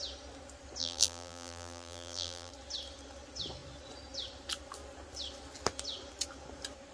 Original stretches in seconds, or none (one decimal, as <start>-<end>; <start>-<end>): 0.0-0.8; 2.5-6.9